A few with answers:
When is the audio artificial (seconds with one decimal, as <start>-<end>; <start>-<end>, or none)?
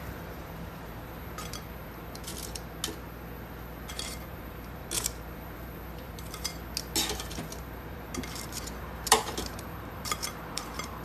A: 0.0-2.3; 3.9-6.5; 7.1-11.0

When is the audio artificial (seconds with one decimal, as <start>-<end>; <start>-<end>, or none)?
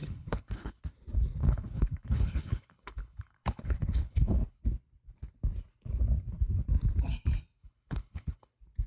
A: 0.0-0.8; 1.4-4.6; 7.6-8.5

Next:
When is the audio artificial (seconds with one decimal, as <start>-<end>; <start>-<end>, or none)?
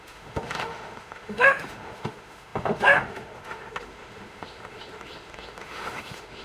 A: 0.0-6.4